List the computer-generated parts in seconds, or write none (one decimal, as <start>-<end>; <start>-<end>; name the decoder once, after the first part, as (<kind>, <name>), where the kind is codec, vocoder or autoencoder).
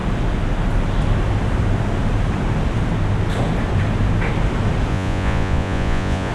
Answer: 4.9-6.3 (vocoder, Vocos)